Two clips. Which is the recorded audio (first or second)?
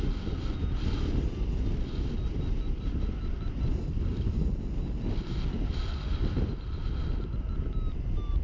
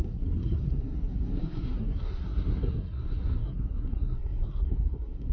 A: first